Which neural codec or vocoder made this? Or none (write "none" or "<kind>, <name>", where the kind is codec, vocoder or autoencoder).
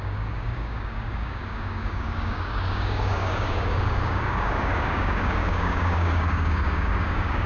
codec, DAC